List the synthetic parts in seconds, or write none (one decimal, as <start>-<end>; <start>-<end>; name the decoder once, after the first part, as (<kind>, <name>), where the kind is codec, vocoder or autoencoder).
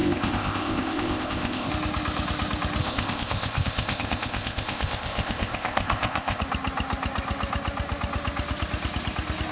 0.0-1.7 (codec, ZipCodec); 2.8-6.4